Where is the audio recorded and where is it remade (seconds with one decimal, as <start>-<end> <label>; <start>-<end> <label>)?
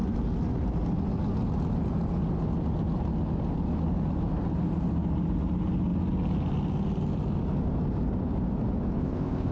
0.0-9.0 recorded; 9.0-9.5 remade